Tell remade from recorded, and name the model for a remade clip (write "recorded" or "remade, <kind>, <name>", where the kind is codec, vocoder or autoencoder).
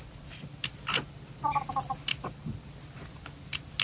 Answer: recorded